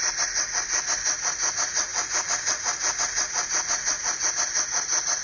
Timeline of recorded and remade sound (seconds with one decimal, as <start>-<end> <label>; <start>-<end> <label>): 0.0-5.2 recorded